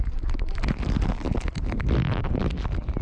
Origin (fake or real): real